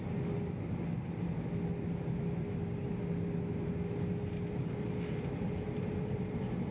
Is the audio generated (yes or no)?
no